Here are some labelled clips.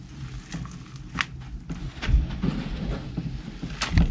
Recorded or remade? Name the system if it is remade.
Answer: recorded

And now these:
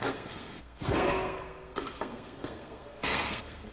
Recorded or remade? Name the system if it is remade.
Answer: remade, codec, SNAC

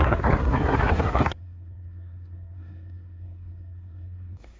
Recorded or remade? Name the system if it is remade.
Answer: remade, codec, SNAC